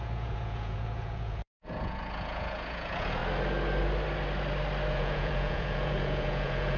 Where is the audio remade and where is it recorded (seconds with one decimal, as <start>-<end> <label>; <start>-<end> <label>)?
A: 0.0-3.2 remade; 3.2-4.9 recorded; 4.9-6.8 remade